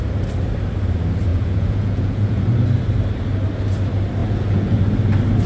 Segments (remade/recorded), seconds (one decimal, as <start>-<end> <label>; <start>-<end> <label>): 0.0-1.3 recorded; 1.3-2.4 remade; 2.4-4.2 recorded; 4.2-4.8 remade; 4.8-5.5 recorded